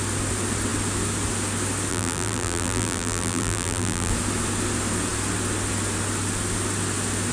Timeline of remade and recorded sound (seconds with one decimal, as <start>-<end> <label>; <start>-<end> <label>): 0.0-1.9 recorded; 1.9-4.1 remade; 4.1-7.3 recorded